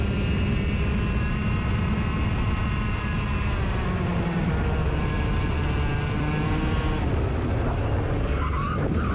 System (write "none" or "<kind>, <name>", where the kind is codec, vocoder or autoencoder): none